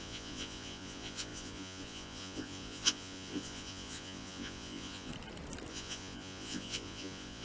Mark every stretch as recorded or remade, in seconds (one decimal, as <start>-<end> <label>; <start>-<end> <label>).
0.0-5.1 remade; 5.1-5.7 recorded; 5.7-7.4 remade